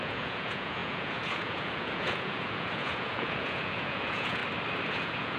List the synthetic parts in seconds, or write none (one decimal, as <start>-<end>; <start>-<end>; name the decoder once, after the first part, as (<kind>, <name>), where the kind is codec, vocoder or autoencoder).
0.0-4.4 (vocoder, Vocos); 4.9-5.4